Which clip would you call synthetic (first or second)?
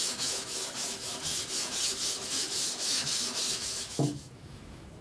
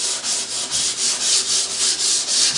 first